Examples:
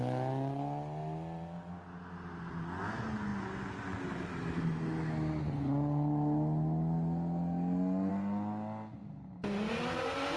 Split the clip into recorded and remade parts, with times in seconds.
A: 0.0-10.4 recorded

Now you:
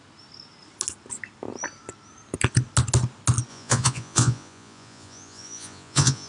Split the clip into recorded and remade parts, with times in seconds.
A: 0.0-3.5 recorded; 3.5-6.3 remade

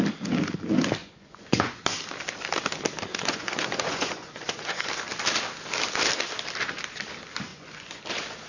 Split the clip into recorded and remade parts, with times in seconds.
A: 0.0-1.0 recorded; 1.0-1.8 remade; 1.8-3.1 recorded; 3.1-4.9 remade; 4.9-7.5 recorded; 7.5-8.0 remade; 8.0-8.5 recorded

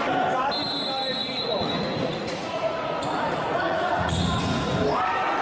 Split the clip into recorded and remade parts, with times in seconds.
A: 0.0-1.2 recorded; 1.2-4.4 remade; 4.4-5.4 recorded